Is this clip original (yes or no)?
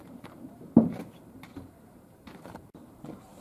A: no